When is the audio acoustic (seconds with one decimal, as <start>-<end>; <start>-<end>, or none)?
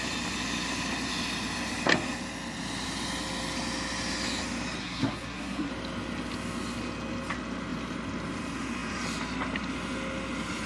0.0-4.8; 5.7-10.7